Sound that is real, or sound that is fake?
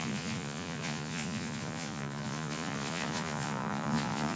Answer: fake